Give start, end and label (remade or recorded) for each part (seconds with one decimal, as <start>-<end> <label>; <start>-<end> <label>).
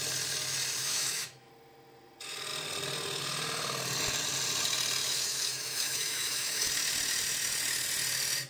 0.0-0.8 recorded; 0.8-1.5 remade; 1.5-5.0 recorded; 5.0-6.7 remade; 6.7-8.5 recorded